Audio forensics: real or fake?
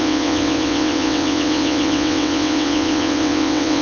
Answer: fake